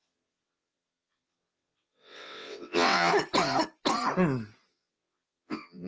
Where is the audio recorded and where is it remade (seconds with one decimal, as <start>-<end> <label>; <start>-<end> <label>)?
0.0-3.1 remade; 3.1-4.7 recorded; 4.7-5.9 remade

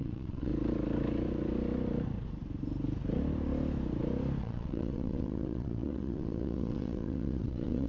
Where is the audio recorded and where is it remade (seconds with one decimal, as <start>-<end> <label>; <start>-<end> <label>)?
0.0-0.5 remade; 0.5-4.4 recorded; 4.4-7.9 remade

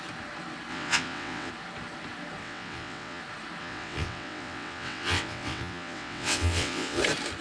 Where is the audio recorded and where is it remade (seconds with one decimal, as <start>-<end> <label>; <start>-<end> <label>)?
0.0-0.7 recorded; 0.7-1.5 remade; 1.5-2.4 recorded; 2.4-3.2 remade; 3.2-3.6 recorded; 3.6-7.0 remade; 7.0-7.4 recorded

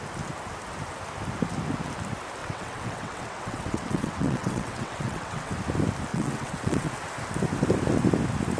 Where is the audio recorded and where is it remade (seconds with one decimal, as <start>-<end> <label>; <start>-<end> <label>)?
0.0-2.4 recorded; 2.4-5.5 remade; 5.5-6.1 recorded; 6.1-6.9 remade; 6.9-8.6 recorded